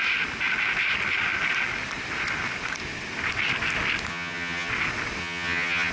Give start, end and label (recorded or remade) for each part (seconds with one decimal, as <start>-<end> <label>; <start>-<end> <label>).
0.0-4.1 recorded; 4.1-4.7 remade; 4.7-5.2 recorded; 5.2-5.9 remade